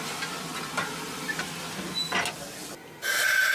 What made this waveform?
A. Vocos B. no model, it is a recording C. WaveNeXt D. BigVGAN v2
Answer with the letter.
B